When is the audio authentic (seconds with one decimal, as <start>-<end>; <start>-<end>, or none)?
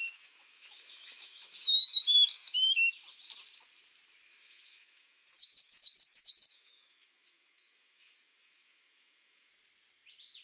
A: 2.9-4.3; 9.5-10.4